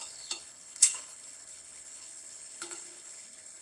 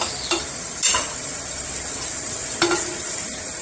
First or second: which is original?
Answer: second